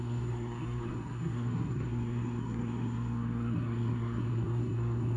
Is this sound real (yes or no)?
no